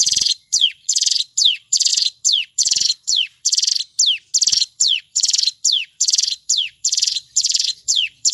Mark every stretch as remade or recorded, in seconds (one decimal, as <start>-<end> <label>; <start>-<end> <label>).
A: 0.0-3.7 remade; 3.7-4.5 recorded; 4.5-8.3 remade